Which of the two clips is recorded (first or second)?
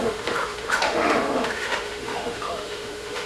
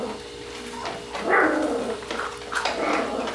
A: second